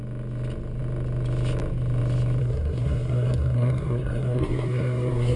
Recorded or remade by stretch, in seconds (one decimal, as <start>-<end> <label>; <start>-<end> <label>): 0.0-2.4 recorded; 2.4-5.4 remade